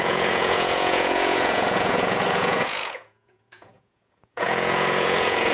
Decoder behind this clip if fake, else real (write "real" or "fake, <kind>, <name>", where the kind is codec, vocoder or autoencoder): fake, vocoder, Vocos